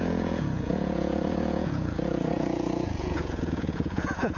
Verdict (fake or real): fake